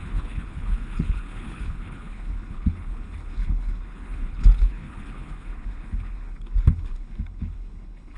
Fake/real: fake